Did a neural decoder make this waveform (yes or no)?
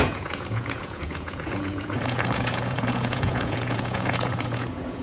yes